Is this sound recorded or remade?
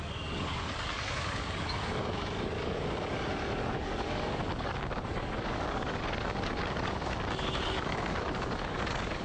remade